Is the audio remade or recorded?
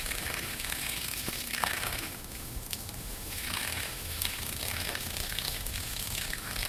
remade